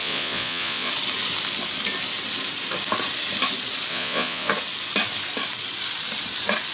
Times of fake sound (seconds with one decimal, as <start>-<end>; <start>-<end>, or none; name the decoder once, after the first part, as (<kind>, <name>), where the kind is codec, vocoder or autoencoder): 0.0-0.9 (vocoder, Vocos); 3.9-4.5